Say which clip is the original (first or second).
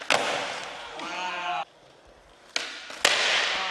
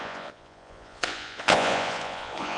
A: first